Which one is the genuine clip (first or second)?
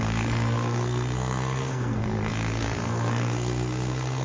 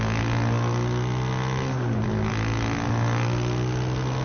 second